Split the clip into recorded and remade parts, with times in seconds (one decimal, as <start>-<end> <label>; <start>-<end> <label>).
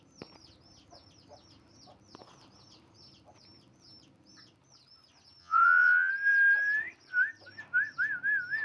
0.0-5.4 recorded; 5.4-6.1 remade; 6.1-8.6 recorded